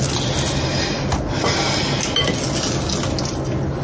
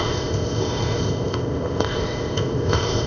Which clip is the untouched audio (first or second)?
first